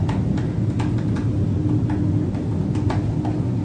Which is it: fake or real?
real